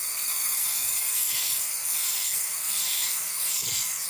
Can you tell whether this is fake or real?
fake